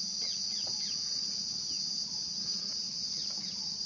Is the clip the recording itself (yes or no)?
no